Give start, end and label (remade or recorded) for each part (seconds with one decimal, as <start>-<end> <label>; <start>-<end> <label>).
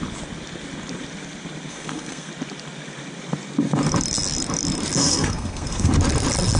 0.0-1.7 recorded; 1.7-2.3 remade; 2.3-5.0 recorded; 5.0-5.9 remade; 5.9-6.6 recorded